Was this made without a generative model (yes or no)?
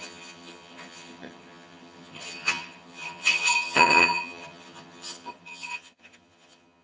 no